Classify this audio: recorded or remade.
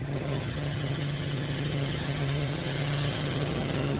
remade